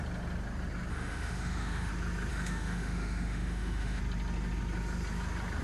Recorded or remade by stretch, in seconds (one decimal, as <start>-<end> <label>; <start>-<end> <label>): 0.0-0.9 recorded; 0.9-1.9 remade; 1.9-2.3 recorded; 2.3-4.0 remade; 4.0-5.6 recorded